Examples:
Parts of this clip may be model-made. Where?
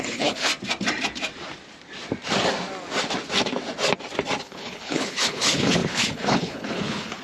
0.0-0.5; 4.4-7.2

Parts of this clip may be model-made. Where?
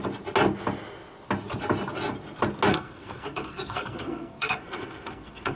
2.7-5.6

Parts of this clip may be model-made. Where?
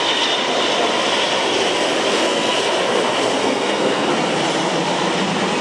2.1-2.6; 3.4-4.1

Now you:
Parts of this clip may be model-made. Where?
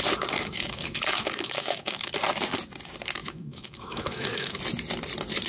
0.4-2.1; 3.2-4.6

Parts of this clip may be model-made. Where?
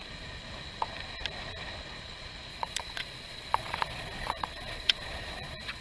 2.5-5.8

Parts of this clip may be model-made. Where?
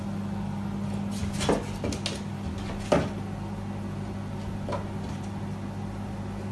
none